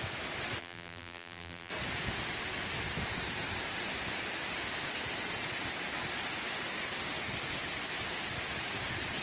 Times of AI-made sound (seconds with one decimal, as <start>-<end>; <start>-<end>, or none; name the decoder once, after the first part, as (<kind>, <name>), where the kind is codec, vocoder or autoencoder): 0.6-1.7 (vocoder, BigVGAN v2)